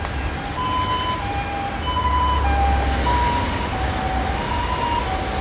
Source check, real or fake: real